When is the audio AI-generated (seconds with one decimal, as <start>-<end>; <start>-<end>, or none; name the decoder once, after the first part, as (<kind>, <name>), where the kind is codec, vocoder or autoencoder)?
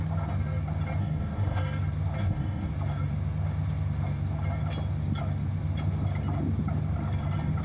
1.0-1.6 (codec, SNAC); 2.2-2.7